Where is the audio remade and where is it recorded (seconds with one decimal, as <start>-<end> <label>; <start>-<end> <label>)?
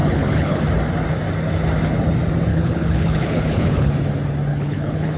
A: 0.0-0.6 remade; 0.6-2.5 recorded; 2.5-3.9 remade; 3.9-4.5 recorded; 4.5-5.2 remade